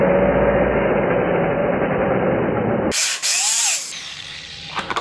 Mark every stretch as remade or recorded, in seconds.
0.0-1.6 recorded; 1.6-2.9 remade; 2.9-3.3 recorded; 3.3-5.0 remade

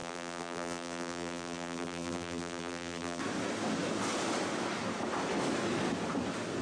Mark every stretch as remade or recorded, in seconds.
0.0-3.2 remade; 3.2-6.6 recorded

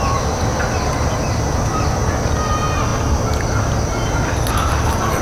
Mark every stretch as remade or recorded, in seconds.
0.0-5.2 recorded

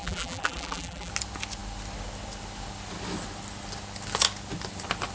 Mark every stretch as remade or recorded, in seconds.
0.0-1.1 remade; 1.1-5.1 recorded

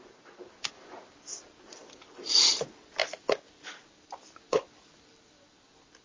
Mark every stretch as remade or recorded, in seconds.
0.0-1.8 remade; 1.8-2.5 recorded; 2.5-3.0 remade; 3.0-3.5 recorded; 3.5-6.0 remade

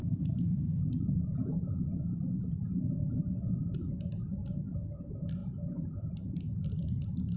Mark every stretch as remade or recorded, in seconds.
0.0-4.4 remade; 4.4-5.4 recorded; 5.4-6.2 remade; 6.2-7.4 recorded